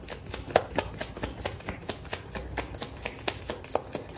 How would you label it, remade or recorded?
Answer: recorded